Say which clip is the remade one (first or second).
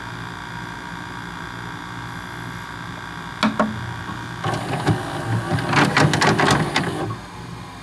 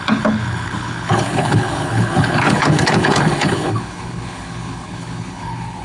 second